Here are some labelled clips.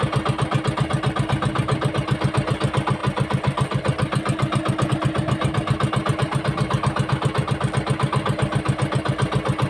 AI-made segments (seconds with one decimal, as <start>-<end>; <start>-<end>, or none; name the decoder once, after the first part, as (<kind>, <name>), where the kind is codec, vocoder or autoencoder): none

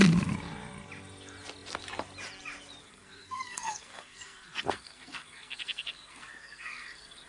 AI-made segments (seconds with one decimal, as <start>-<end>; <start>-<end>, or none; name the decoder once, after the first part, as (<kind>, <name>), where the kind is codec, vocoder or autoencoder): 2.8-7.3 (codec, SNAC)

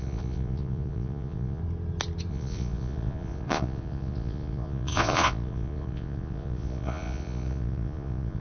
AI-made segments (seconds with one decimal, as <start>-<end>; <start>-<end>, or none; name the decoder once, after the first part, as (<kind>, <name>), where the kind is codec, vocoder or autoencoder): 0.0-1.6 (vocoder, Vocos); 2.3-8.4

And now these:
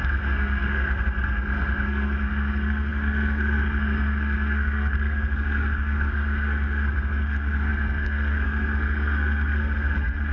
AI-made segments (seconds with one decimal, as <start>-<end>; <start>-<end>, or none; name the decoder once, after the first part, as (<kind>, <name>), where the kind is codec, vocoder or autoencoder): 0.0-10.3 (codec, SNAC)